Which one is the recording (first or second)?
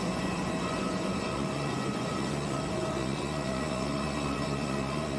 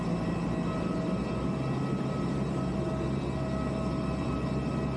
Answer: second